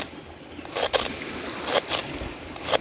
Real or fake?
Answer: real